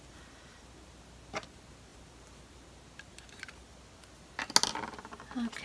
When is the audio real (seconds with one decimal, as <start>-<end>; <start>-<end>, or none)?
0.0-5.6